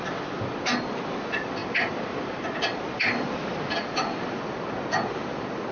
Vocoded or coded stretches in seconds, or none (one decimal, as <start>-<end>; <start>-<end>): none